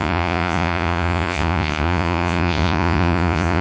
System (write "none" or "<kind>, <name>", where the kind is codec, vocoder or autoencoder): vocoder, Vocos